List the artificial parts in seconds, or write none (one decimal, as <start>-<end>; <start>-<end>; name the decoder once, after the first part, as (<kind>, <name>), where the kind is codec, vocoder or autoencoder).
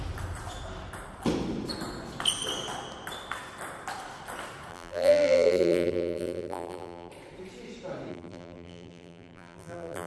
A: 4.7-7.1 (vocoder, BigVGAN v2); 8.1-10.1